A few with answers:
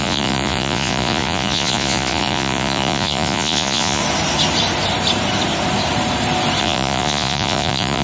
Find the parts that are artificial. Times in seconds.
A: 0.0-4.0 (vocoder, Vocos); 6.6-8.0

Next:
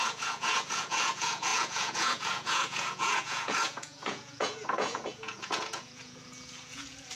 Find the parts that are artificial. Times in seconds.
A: 0.0-7.2 (vocoder, Vocos)

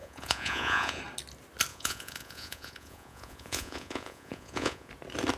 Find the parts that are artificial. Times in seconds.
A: 0.0-1.0 (vocoder, Vocos); 1.7-4.9

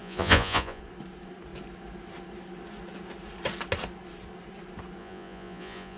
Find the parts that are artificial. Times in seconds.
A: 0.0-0.8 (vocoder, Vocos); 5.0-6.0

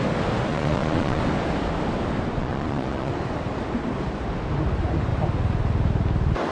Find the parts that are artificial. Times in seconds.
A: 0.5-1.2 (vocoder, Vocos); 2.4-3.1